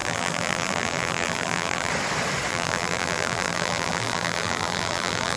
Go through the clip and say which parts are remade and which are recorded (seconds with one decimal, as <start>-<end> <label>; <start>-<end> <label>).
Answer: 0.0-1.9 remade; 1.9-2.5 recorded; 2.5-5.4 remade